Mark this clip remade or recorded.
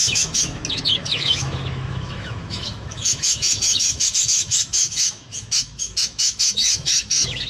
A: remade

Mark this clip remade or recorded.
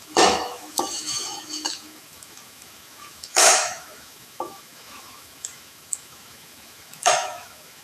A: remade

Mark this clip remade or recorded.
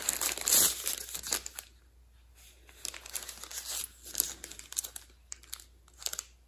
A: recorded